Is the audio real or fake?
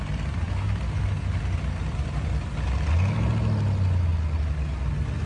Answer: real